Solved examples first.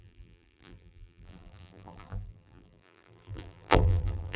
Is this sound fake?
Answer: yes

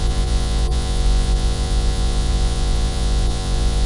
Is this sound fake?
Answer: yes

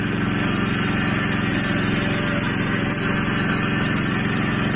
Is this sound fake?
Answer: no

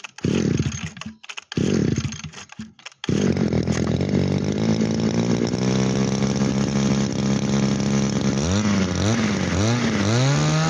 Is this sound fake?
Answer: no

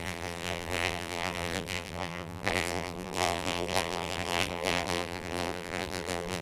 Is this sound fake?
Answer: yes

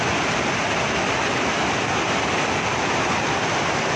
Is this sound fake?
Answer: no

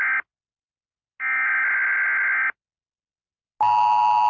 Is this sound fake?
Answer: no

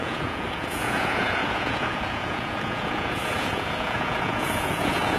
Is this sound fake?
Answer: yes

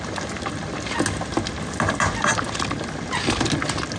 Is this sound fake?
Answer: no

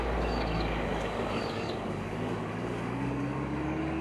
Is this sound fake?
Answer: yes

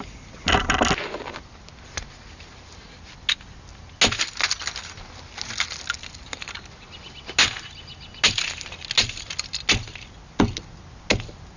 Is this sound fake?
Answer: no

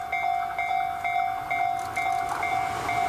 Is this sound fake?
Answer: no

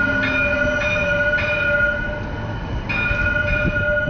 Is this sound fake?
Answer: no